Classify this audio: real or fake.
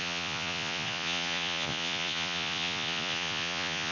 fake